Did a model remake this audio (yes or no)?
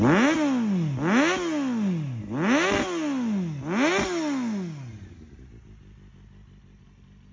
no